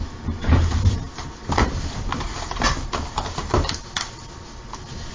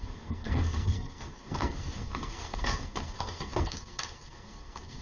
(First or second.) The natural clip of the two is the first